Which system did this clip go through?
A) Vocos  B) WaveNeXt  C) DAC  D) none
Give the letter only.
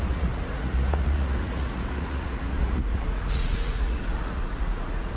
A